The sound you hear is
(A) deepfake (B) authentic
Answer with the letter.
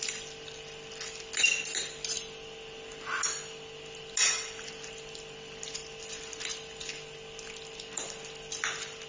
B